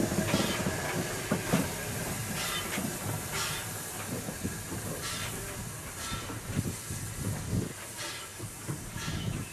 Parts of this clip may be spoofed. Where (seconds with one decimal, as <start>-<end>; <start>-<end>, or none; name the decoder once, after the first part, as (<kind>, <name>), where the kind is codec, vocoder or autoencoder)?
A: 8.3-9.5 (vocoder, BigVGAN v2)